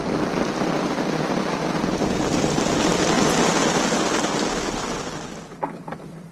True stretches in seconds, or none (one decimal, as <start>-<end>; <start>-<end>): 0.0-6.3